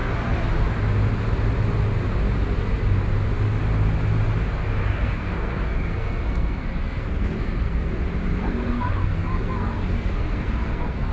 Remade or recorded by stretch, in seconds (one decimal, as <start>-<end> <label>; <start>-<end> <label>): 0.0-4.8 recorded; 4.8-7.9 remade; 7.9-8.4 recorded; 8.4-11.1 remade